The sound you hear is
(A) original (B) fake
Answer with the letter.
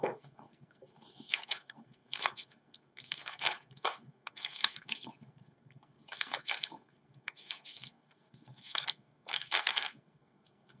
B